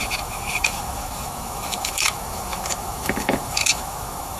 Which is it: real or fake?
fake